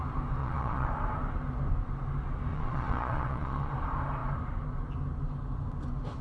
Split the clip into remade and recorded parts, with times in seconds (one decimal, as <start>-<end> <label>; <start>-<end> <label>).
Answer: 0.0-0.4 recorded; 0.4-0.9 remade; 0.9-2.5 recorded; 2.5-3.7 remade; 3.7-6.2 recorded